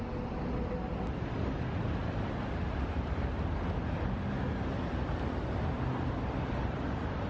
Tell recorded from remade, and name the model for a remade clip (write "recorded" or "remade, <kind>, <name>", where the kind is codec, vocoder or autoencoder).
recorded